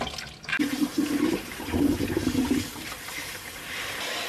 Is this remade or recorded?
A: recorded